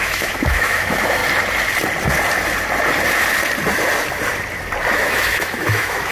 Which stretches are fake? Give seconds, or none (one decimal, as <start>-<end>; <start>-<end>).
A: 0.0-1.2; 4.9-6.1